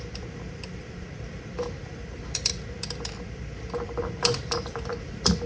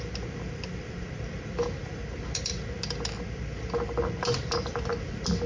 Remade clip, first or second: first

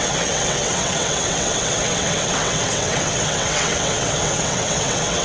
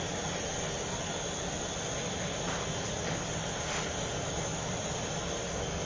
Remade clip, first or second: first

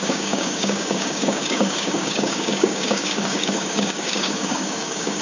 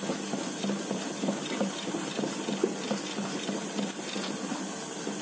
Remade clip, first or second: first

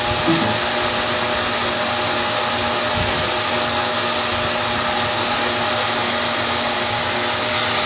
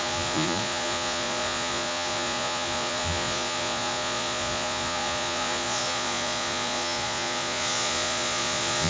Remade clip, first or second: second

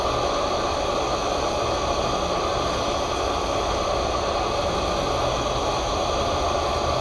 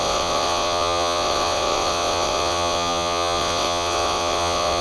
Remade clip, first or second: second